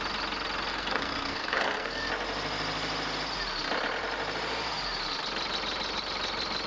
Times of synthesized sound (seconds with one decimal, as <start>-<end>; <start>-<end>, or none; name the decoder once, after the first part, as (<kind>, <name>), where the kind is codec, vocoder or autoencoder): 0.7-2.1 (codec, SNAC)